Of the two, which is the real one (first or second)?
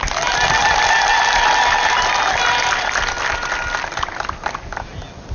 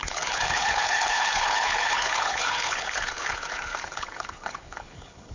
first